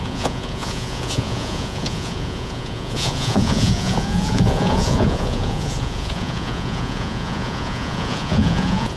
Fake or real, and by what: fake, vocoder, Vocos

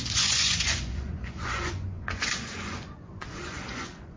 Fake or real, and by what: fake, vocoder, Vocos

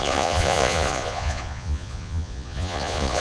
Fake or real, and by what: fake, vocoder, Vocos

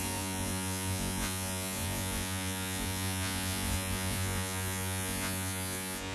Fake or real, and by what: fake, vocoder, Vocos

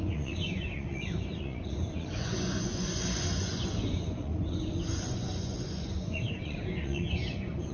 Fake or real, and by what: fake, vocoder, Vocos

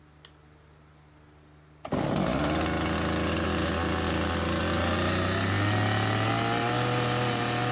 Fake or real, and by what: real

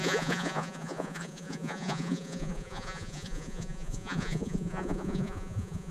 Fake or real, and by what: fake, vocoder, Vocos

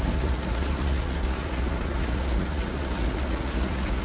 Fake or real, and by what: fake, vocoder, Vocos